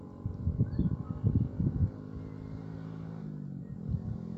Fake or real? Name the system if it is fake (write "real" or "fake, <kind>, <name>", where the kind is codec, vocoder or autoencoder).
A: real